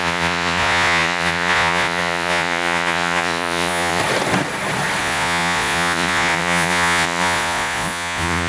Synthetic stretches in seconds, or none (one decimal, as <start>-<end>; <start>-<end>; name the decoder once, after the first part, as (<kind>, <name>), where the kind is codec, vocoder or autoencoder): 0.0-4.0 (vocoder, Vocos); 5.0-8.5